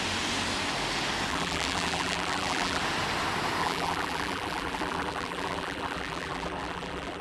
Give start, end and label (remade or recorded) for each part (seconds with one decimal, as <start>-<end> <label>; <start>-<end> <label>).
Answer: 0.0-1.3 recorded; 1.3-2.8 remade; 2.8-3.6 recorded; 3.6-7.2 remade